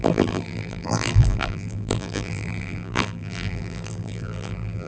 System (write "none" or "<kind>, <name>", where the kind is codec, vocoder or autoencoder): vocoder, BigVGAN v2